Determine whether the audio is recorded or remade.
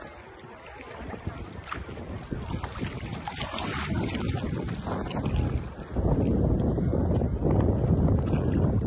recorded